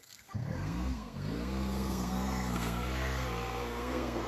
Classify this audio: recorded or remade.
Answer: remade